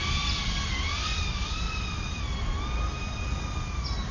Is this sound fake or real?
real